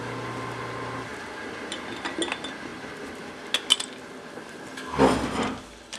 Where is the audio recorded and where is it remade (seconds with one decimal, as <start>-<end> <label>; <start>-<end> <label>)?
0.0-6.0 recorded